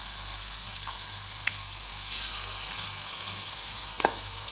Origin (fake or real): fake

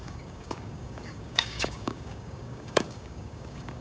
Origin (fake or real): fake